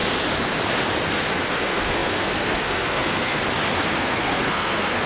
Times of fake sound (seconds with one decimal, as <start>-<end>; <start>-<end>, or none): 1.5-3.4; 4.0-5.1